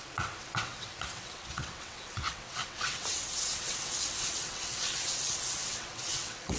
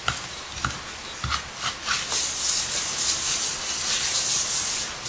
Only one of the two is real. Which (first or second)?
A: second